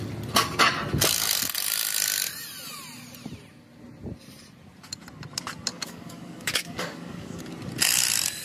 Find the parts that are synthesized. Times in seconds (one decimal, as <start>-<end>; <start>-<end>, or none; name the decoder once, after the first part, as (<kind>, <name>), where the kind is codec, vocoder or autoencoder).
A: 5.7-7.4 (codec, DAC)